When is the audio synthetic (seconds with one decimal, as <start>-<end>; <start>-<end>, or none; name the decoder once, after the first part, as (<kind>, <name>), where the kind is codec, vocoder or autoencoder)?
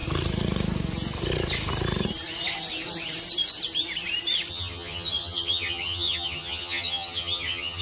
4.5-7.8 (vocoder, HiFi-GAN)